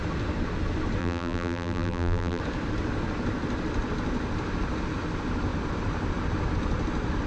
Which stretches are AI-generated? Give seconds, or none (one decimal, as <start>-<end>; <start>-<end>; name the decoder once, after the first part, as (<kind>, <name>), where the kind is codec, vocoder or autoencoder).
1.0-2.4 (vocoder, BigVGAN v2)